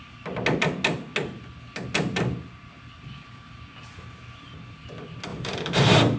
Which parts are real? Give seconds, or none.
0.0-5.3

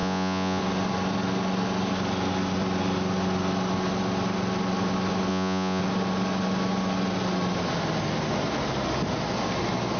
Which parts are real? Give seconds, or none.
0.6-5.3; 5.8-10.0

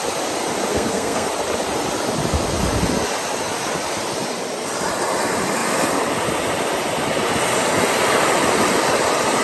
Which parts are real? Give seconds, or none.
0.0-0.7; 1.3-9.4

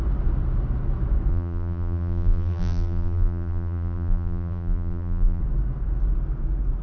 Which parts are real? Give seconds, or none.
0.0-1.3; 5.4-6.8

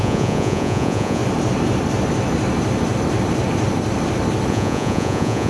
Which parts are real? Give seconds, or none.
1.2-4.5

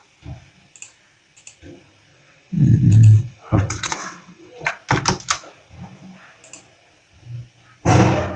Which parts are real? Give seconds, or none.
0.0-2.1; 4.7-8.4

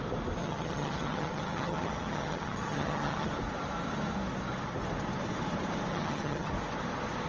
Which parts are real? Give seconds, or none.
0.0-0.4; 3.3-5.9; 6.5-7.3

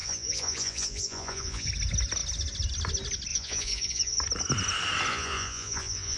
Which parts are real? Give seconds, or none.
1.7-3.3; 4.2-5.1